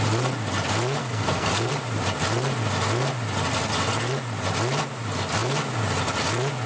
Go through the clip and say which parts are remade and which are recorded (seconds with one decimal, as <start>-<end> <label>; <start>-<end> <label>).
0.0-1.0 recorded; 1.0-1.7 remade; 1.7-6.7 recorded